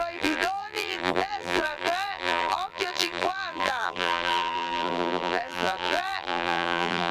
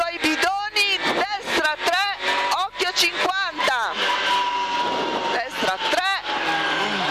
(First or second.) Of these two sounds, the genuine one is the second